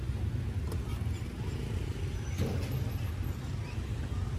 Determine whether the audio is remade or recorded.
recorded